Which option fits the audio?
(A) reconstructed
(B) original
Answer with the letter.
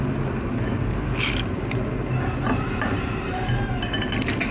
B